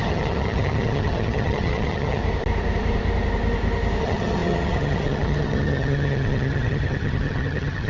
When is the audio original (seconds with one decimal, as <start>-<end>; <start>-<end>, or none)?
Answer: 2.2-4.0